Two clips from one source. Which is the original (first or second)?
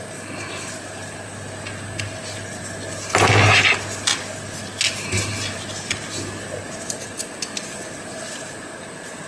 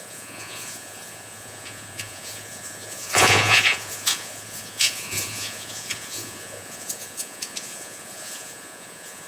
first